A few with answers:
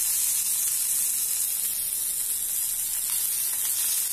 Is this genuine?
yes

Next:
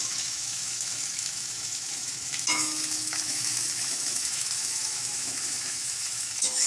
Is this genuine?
no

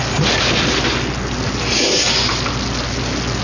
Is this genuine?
yes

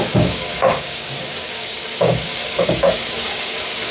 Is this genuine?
no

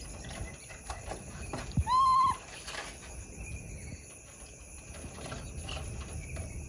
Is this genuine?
no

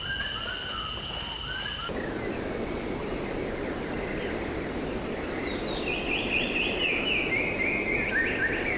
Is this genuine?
yes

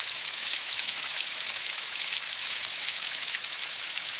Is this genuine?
no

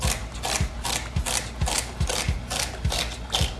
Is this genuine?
yes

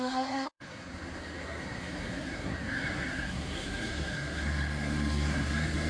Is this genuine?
no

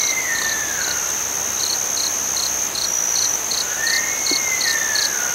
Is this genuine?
yes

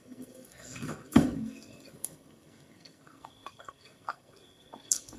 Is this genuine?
no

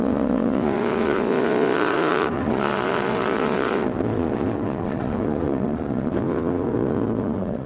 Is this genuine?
no